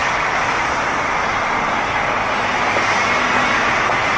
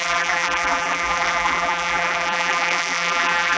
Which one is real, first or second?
first